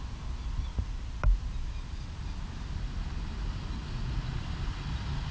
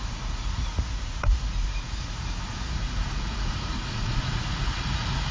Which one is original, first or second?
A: first